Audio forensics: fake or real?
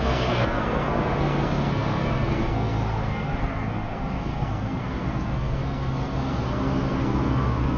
fake